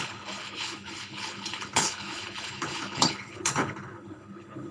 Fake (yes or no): yes